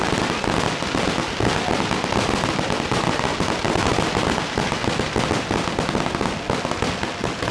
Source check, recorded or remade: recorded